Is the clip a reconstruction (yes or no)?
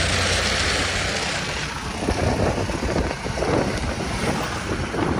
no